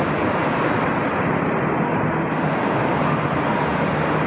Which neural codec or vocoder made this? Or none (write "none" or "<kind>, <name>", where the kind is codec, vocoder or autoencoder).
none